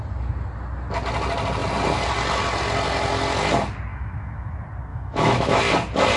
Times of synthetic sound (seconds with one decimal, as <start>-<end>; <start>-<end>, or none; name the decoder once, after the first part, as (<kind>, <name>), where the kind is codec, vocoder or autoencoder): 3.9-4.5 (autoencoder, DAC-VAE); 4.9-5.6